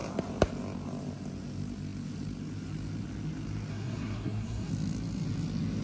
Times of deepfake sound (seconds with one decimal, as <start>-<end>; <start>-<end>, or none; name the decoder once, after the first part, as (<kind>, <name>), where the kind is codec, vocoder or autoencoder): 3.7-4.7 (codec, SNAC)